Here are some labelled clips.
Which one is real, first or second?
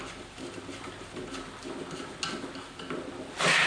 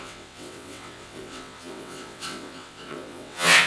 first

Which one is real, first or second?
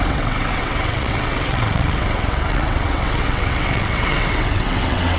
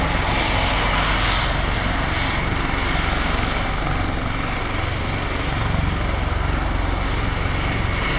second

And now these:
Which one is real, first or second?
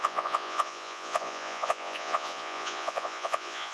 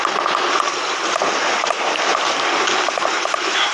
second